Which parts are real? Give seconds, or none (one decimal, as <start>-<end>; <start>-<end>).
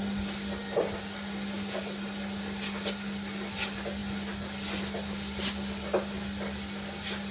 0.0-7.3